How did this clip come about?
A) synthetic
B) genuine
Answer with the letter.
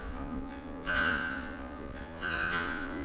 A